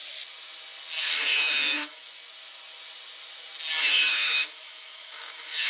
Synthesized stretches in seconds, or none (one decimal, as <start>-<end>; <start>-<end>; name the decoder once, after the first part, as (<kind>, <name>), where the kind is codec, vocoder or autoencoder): 1.0-2.0 (autoencoder, DAC-VAE); 3.8-5.7